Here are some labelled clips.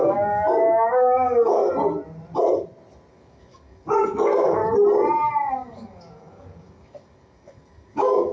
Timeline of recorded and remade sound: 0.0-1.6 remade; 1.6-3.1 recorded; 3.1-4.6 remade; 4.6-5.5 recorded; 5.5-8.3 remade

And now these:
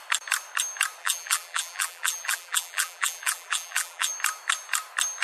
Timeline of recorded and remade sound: 0.0-1.0 recorded; 1.0-4.1 remade; 4.1-5.2 recorded

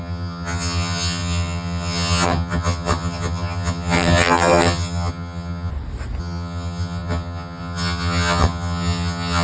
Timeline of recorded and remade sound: 0.0-5.7 remade; 5.7-6.2 recorded; 6.2-9.4 remade

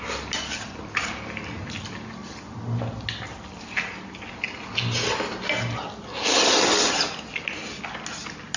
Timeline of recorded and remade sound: 0.0-8.6 recorded

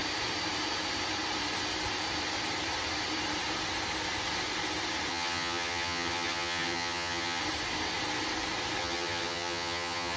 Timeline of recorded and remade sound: 0.0-5.1 recorded; 5.1-7.4 remade; 7.4-8.8 recorded; 8.8-10.2 remade